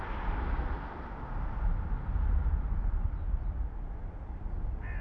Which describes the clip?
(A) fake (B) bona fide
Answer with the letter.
B